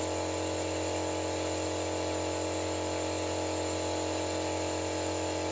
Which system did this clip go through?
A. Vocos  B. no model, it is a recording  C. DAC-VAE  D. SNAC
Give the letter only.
B